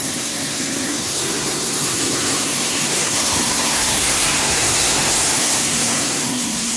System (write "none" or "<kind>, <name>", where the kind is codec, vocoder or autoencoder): codec, SNAC